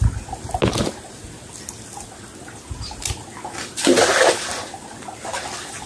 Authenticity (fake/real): real